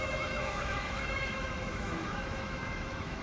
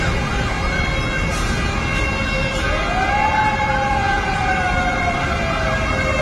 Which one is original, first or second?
second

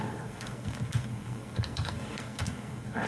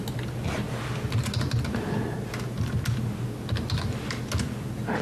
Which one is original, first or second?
second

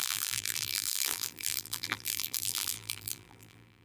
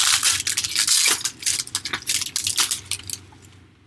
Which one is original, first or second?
second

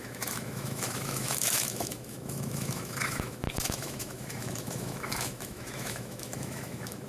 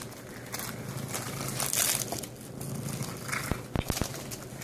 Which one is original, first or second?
second